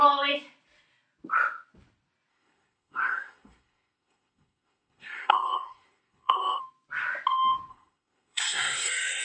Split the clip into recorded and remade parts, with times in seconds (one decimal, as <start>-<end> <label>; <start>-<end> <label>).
0.0-2.3 recorded; 2.3-6.6 remade; 6.6-7.7 recorded; 7.7-9.2 remade